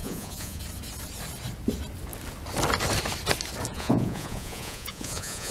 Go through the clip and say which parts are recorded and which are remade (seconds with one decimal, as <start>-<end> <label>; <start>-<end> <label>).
0.0-0.6 remade; 0.6-3.7 recorded; 3.7-5.5 remade